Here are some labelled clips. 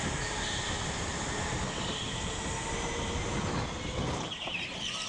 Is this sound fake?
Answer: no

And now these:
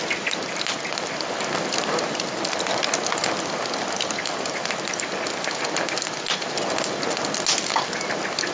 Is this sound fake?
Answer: no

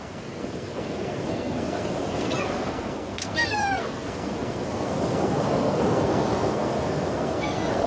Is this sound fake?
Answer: yes